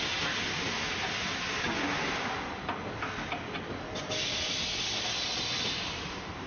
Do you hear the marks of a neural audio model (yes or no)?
no